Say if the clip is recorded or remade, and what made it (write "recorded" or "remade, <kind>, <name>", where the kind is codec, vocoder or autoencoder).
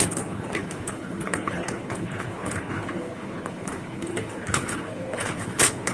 remade, codec, HILCodec